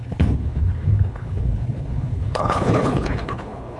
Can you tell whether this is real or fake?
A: fake